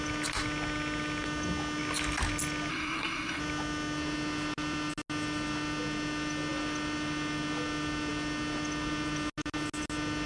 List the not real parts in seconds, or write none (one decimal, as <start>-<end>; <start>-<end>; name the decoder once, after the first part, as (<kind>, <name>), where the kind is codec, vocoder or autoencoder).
2.7-3.4 (codec, SNAC)